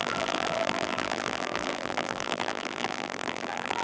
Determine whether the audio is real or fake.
fake